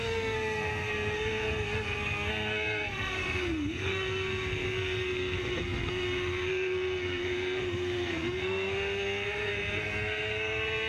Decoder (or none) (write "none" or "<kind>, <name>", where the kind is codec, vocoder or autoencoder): codec, SNAC